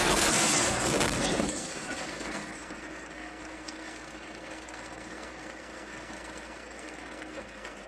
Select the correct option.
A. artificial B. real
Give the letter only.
A